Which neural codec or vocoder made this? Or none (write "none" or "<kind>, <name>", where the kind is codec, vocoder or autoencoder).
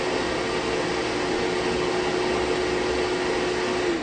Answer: none